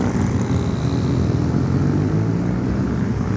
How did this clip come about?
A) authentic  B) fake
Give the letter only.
A